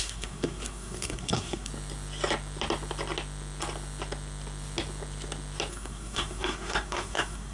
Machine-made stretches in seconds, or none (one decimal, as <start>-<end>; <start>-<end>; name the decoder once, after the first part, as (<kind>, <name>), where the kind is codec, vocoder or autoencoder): 0.0-1.7 (codec, SNAC); 5.7-7.5

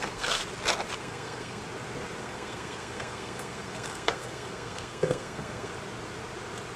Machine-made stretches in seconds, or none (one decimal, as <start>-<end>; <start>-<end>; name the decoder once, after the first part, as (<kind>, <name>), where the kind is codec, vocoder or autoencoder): 0.0-0.4 (codec, SNAC); 1.0-1.6; 2.2-5.7

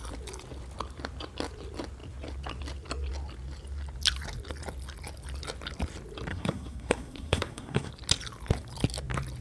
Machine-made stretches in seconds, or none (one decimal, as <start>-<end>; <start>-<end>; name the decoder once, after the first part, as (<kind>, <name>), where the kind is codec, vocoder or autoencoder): 6.3-7.9 (codec, SNAC)

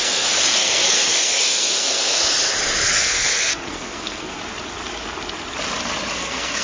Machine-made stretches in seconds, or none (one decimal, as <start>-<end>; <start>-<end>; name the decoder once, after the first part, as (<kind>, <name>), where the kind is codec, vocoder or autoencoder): 0.0-2.2 (codec, SNAC); 2.9-4.4; 6.1-6.6

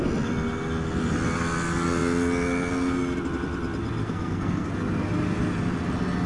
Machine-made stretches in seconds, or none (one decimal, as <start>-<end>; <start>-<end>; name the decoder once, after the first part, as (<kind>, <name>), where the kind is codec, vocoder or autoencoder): 4.0-4.7 (codec, SNAC)

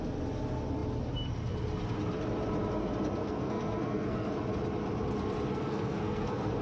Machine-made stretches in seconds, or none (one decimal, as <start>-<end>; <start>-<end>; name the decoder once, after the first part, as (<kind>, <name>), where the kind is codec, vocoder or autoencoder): 3.2-4.3 (codec, SNAC); 5.5-6.6

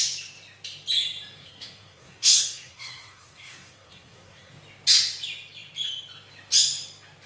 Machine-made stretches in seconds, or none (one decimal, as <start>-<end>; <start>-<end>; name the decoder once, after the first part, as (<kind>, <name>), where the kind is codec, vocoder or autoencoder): 1.4-4.5 (codec, SNAC)